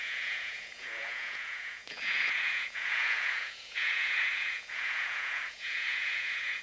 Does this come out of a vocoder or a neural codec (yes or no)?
yes